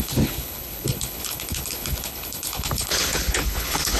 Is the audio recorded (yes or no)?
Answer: no